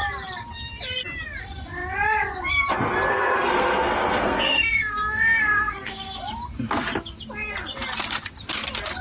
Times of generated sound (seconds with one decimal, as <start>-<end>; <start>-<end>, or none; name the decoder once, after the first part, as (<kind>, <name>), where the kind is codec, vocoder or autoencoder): 3.1-6.2 (codec, SNAC)